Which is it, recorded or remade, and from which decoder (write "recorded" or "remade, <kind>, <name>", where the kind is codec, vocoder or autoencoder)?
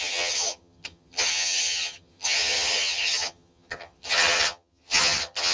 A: remade, vocoder, HiFi-GAN